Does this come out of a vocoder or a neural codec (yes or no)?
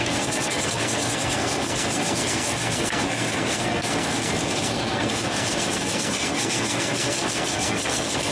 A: yes